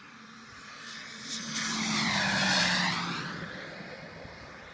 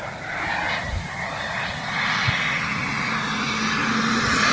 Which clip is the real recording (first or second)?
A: second